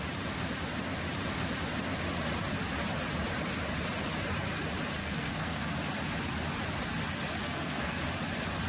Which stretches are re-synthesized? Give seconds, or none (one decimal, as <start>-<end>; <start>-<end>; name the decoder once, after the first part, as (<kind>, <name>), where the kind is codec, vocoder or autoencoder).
5.0-5.7 (codec, SNAC); 7.4-8.0